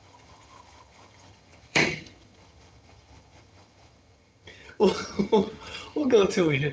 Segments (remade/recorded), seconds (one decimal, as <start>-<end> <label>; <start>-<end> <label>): 0.0-6.7 remade